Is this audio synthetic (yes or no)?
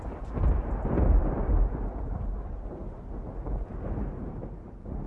no